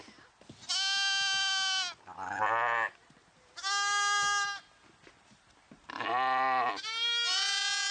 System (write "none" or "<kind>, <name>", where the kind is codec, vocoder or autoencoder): none